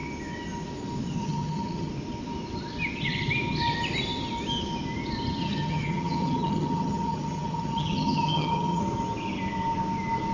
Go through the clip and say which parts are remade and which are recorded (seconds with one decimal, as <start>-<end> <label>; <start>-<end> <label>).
0.0-1.2 recorded; 1.2-1.9 remade; 1.9-5.4 recorded; 5.4-8.8 remade; 8.8-10.3 recorded